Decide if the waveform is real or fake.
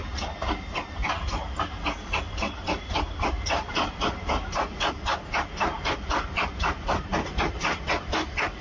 real